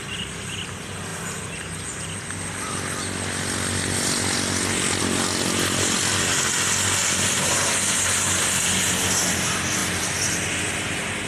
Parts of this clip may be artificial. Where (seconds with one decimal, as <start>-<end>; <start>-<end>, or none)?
7.0-7.5